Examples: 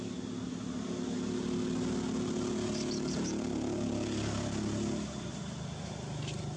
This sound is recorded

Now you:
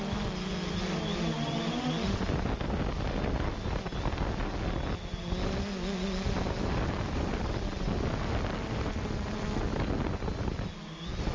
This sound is recorded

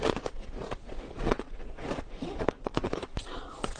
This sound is remade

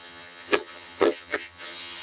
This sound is remade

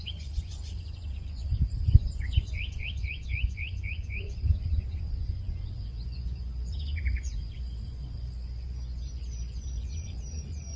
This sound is remade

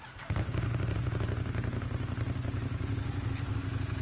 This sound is recorded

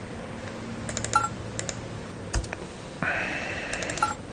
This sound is recorded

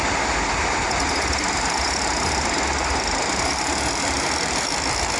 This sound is recorded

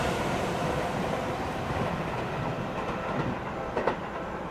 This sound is recorded